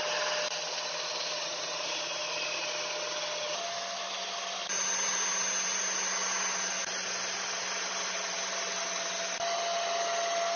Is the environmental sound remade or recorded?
recorded